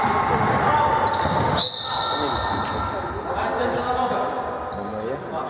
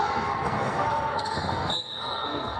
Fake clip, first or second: second